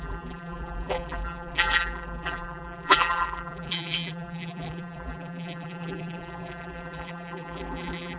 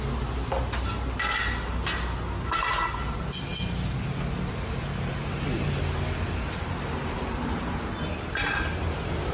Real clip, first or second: second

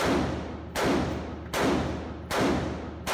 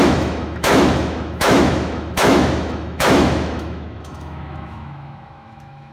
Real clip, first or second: first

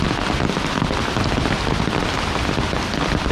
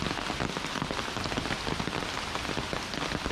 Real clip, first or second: second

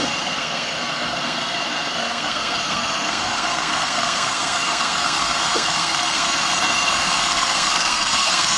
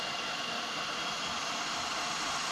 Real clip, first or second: second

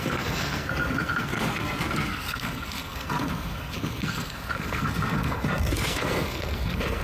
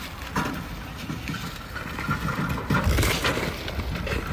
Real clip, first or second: second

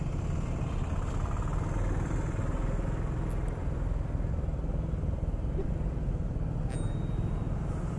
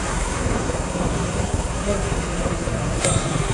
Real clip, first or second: first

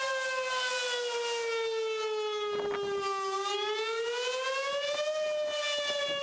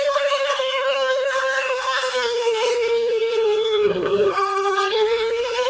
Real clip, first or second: first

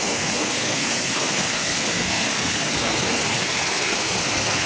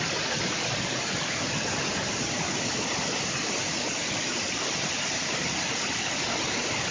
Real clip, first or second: second